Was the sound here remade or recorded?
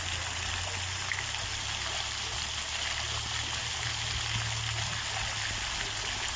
recorded